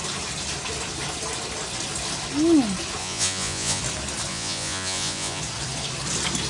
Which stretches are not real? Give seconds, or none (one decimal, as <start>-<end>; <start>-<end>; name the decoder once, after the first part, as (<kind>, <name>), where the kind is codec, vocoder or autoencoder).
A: 3.0-3.8 (vocoder, Vocos); 4.3-5.4